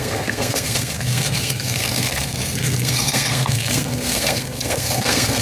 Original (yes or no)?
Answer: no